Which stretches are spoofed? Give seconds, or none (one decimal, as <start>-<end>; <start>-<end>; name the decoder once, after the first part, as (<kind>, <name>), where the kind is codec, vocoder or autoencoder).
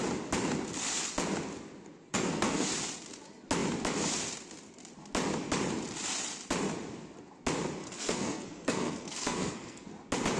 2.1-2.7 (codec, SNAC); 7.8-9.9